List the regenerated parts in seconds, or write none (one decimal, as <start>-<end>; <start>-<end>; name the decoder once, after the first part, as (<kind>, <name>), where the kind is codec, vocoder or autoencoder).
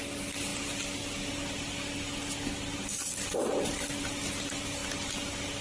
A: none